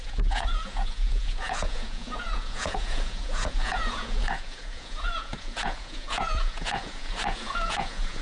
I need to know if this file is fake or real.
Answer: fake